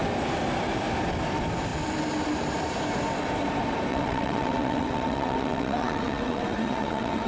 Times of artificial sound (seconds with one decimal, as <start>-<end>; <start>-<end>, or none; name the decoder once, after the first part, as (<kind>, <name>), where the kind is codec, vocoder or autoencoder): 3.9-7.3 (vocoder, WaveNeXt)